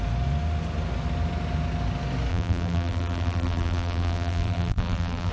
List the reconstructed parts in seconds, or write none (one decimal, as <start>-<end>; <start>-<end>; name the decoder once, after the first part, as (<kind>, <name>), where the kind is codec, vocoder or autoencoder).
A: 2.3-5.3 (vocoder, BigVGAN v2)